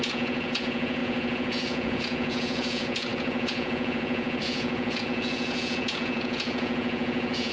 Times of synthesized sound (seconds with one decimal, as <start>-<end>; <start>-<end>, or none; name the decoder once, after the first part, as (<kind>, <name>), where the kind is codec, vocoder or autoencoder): 0.0-7.5 (vocoder, Vocos)